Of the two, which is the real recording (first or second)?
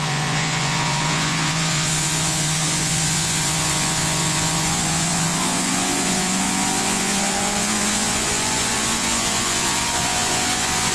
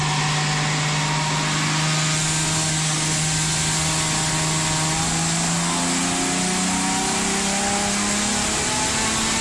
second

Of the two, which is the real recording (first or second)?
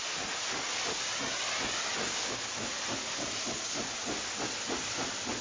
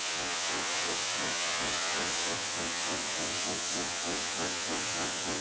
first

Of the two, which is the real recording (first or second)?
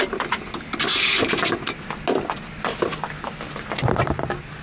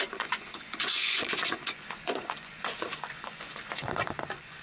first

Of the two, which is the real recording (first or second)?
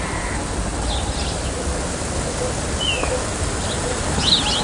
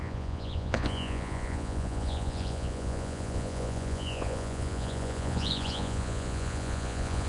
first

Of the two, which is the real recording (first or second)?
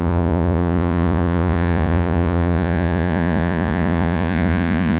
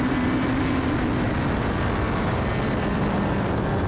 second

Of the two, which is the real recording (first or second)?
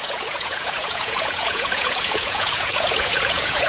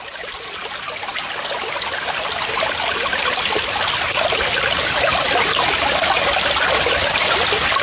second